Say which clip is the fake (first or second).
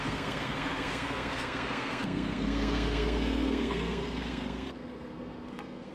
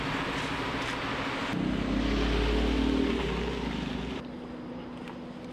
first